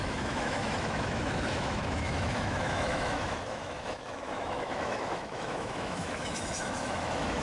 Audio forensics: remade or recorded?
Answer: remade